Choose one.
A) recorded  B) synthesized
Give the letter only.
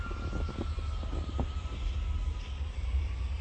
A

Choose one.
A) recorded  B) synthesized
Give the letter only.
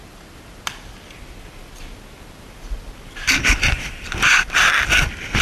A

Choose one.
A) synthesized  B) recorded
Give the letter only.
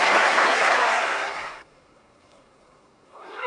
A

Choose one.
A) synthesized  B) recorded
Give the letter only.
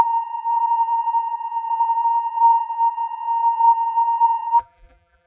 A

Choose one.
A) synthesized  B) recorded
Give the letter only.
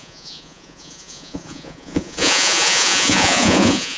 A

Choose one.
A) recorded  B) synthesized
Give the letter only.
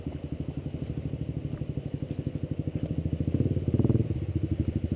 A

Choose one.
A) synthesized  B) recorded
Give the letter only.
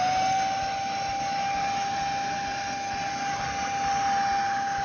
B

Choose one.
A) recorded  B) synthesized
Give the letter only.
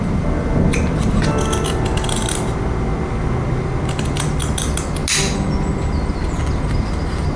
A